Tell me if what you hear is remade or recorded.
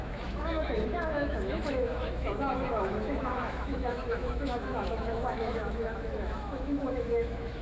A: remade